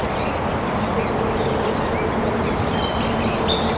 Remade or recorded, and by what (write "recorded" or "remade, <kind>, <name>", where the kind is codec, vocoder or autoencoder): recorded